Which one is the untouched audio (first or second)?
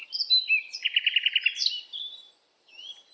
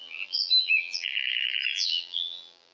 first